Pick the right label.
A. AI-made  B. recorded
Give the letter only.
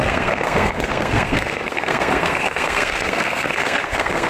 A